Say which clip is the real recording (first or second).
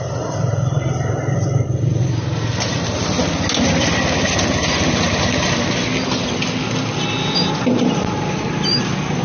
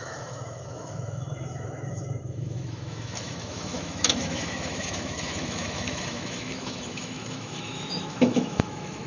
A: first